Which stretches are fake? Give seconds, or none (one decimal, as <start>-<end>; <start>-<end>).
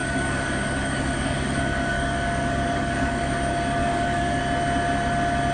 0.0-3.3; 3.8-4.4